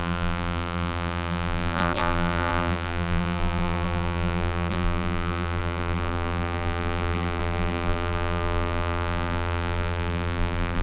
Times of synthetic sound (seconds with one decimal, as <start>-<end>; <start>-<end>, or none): 0.0-10.8